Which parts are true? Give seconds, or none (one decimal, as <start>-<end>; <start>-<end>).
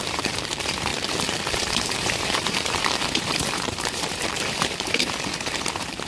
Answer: 0.9-1.5